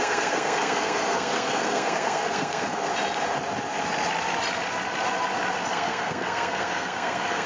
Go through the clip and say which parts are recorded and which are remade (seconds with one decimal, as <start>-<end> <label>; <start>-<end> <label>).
0.0-2.9 remade; 2.9-5.7 recorded; 5.7-7.5 remade